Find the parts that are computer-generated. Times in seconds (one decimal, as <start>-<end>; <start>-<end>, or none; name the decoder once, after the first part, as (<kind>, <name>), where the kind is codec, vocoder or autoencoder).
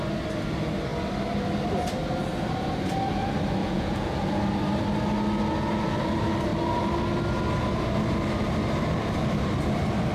3.6-4.4 (vocoder, Vocos)